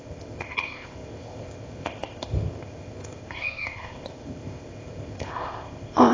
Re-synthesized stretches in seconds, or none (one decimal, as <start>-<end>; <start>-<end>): 0.0-6.1